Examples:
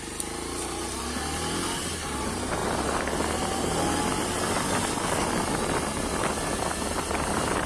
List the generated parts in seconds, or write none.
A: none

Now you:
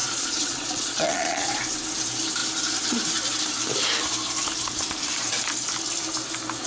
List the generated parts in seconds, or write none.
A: 0.0-1.5 (vocoder, Vocos)

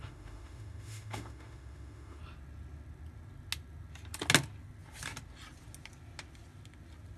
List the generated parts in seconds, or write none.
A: 0.0-2.2 (autoencoder, DAC-VAE)

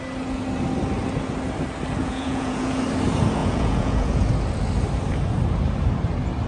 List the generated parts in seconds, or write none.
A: 2.0-2.8 (vocoder, Vocos); 3.4-4.3

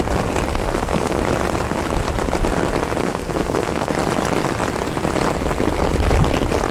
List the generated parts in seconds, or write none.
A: 0.5-1.2 (codec, SNAC); 3.0-3.9